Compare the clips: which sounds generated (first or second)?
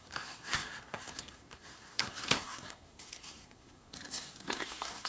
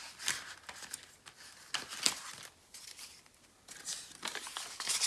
first